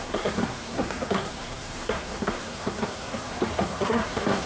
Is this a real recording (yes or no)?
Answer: no